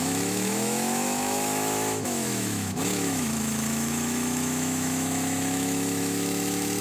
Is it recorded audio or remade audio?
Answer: remade